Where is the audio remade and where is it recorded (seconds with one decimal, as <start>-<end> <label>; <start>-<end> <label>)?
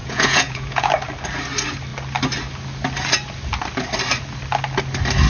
0.0-0.9 remade; 0.9-5.3 recorded